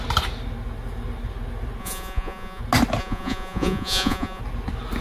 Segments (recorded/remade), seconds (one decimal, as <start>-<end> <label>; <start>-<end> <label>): 0.0-1.8 recorded; 1.8-2.6 remade; 2.6-3.0 recorded; 3.0-4.4 remade; 4.4-5.0 recorded